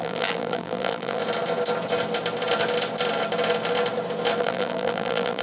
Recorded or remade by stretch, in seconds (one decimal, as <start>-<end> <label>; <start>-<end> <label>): 0.0-1.2 remade; 1.2-4.4 recorded; 4.4-5.4 remade